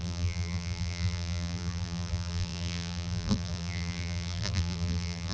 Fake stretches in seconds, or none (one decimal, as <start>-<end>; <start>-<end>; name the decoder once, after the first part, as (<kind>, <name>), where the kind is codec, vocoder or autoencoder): 0.0-5.3 (vocoder, BigVGAN v2)

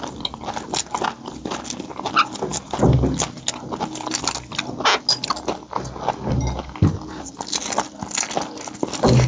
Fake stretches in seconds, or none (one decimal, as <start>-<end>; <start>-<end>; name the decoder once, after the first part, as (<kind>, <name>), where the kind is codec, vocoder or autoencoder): none

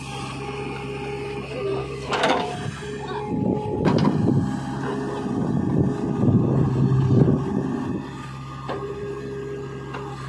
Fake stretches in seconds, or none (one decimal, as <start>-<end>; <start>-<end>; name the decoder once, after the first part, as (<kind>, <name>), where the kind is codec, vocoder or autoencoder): 1.8-2.5 (codec, DAC)

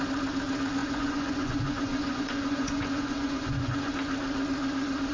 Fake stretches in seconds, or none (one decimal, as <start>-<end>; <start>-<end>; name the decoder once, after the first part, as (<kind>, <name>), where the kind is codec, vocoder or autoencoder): 0.8-3.9 (vocoder, Vocos)

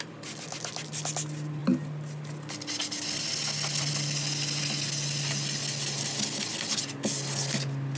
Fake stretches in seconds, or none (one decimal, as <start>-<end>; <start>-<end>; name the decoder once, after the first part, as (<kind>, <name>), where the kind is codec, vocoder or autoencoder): none

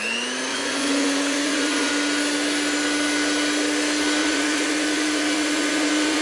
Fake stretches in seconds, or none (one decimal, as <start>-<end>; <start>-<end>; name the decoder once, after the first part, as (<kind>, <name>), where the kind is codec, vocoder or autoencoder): 0.5-1.9 (vocoder, Vocos); 4.2-6.2

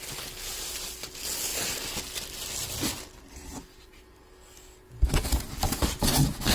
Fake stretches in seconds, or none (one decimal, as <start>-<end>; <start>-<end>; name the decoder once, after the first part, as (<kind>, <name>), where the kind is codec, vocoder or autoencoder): none